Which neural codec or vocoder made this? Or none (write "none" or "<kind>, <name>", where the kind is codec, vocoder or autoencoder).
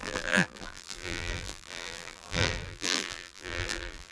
vocoder, BigVGAN v2